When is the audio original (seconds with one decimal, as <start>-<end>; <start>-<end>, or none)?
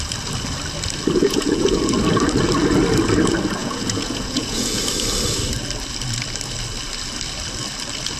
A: 0.0-1.2; 1.8-3.6; 4.8-8.2